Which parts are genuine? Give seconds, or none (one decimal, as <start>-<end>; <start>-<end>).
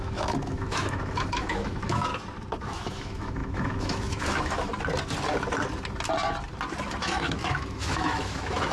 2.1-2.6; 4.7-7.0